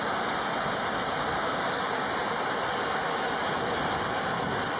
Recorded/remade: recorded